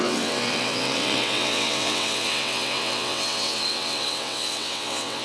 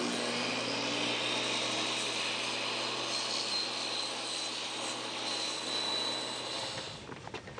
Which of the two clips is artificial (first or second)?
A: first